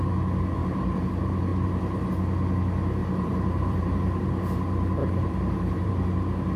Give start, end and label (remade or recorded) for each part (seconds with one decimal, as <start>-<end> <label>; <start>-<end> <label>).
0.0-0.6 recorded; 0.6-1.1 remade; 1.1-1.5 recorded; 1.5-2.1 remade; 2.1-3.0 recorded; 3.0-4.2 remade; 4.2-5.0 recorded; 5.0-5.9 remade; 5.9-6.6 recorded